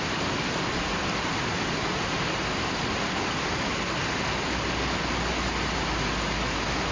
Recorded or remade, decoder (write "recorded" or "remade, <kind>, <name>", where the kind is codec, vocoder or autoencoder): recorded